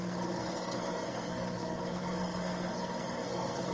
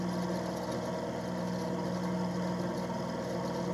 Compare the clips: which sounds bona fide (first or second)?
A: second